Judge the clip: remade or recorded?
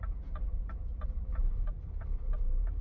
remade